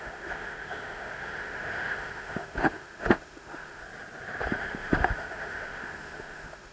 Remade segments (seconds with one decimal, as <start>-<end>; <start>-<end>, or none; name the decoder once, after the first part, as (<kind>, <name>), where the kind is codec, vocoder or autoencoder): 0.0-3.8 (autoencoder, DAC-VAE); 4.5-6.7